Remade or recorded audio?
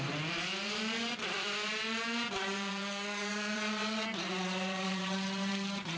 remade